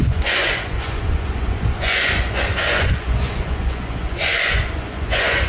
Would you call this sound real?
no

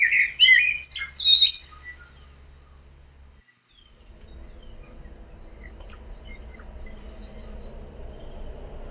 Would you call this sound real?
yes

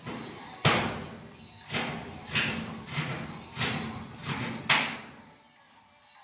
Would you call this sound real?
yes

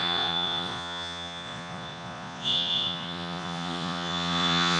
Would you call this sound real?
no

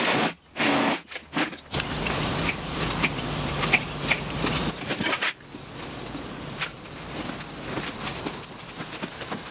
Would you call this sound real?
yes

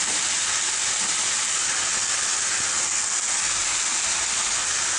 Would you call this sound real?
yes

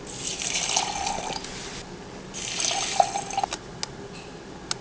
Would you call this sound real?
yes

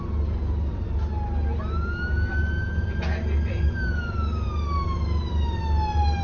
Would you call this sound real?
yes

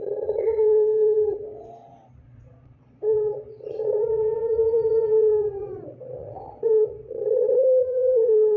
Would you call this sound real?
no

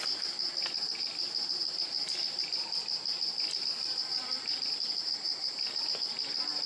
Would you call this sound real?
yes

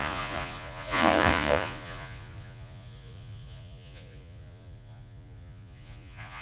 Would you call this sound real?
no